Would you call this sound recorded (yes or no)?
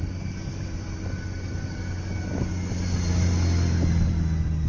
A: yes